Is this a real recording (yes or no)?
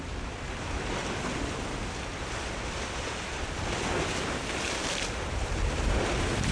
yes